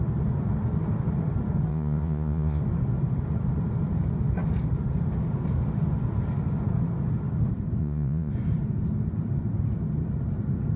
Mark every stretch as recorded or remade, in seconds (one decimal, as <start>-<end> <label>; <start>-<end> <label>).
0.0-1.7 recorded; 1.7-2.6 remade; 2.6-7.8 recorded; 7.8-8.3 remade; 8.3-10.8 recorded